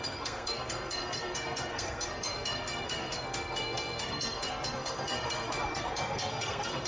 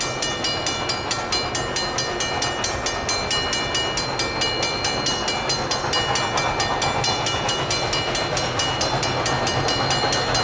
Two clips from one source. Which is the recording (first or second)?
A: second